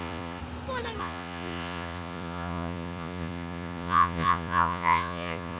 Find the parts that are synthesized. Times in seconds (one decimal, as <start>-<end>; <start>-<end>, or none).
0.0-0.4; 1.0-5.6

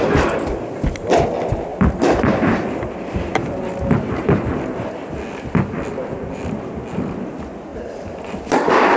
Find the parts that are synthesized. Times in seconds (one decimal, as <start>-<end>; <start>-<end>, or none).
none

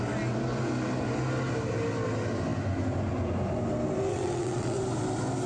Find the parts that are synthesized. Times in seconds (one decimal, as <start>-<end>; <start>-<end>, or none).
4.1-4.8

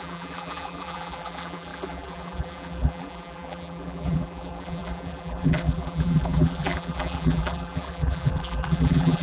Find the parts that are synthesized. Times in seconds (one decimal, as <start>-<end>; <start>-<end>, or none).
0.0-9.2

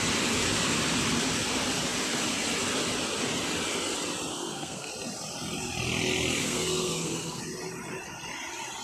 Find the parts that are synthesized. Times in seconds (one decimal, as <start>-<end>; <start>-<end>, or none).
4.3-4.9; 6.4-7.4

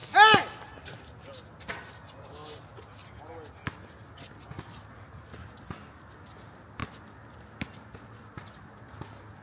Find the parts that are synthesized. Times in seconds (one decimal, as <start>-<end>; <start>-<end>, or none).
none